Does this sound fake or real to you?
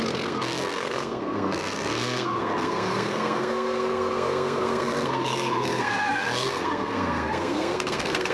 fake